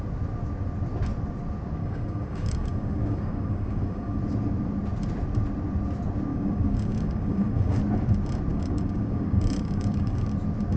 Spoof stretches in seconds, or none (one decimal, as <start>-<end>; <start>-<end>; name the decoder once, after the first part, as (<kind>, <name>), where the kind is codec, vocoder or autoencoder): 1.8-4.2 (codec, DAC); 6.3-7.8; 8.5-10.3